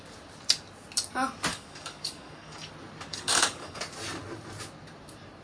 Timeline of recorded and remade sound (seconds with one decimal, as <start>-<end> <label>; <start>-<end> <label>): 0.0-1.5 recorded; 1.5-2.7 remade; 2.7-3.1 recorded; 3.1-3.8 remade; 3.8-5.4 recorded